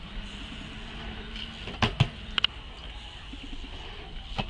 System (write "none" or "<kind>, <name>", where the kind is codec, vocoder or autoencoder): none